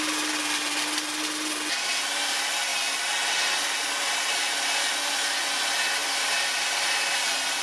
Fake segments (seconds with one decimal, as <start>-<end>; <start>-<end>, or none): none